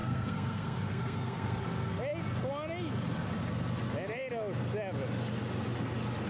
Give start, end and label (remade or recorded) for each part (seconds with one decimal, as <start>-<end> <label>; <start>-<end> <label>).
0.0-1.6 remade; 1.6-6.3 recorded